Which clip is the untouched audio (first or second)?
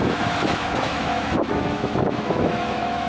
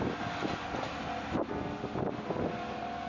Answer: second